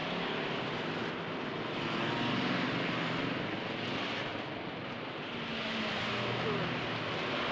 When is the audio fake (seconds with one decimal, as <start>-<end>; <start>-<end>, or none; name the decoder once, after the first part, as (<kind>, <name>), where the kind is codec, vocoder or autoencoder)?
none